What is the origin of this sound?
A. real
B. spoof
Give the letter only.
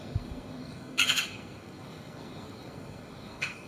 B